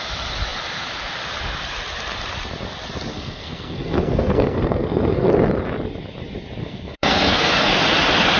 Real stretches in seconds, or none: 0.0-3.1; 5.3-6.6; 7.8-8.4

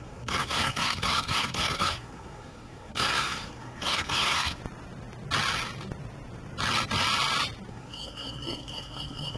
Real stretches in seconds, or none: 4.6-7.7

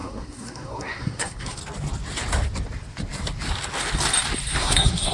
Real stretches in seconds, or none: 1.6-4.6

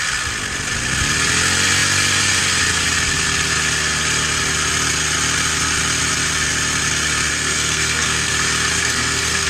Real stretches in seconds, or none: 0.0-7.3; 8.3-8.8

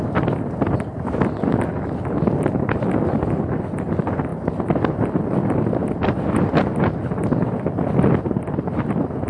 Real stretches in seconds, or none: 0.0-9.3

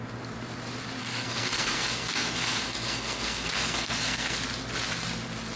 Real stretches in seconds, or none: 0.0-1.0; 4.4-5.6

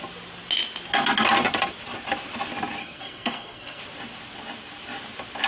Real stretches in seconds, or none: 0.0-2.8; 3.8-5.5